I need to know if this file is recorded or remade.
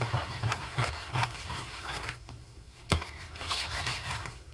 remade